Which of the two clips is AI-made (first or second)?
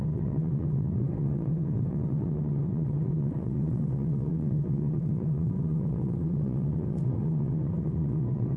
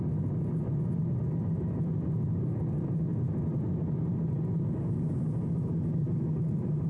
first